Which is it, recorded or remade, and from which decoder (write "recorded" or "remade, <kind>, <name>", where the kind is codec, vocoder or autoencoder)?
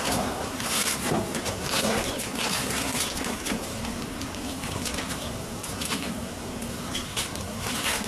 remade, codec, SNAC